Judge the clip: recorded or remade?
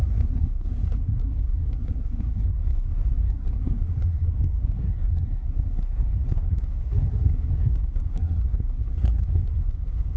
remade